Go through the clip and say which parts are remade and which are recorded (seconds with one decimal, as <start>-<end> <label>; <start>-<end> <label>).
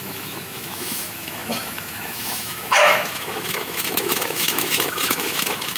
0.0-5.8 remade